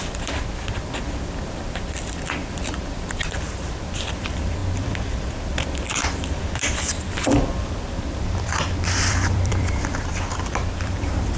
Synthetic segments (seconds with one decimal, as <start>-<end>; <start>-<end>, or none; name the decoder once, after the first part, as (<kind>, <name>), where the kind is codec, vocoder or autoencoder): 0.0-11.4 (vocoder, BigVGAN v2)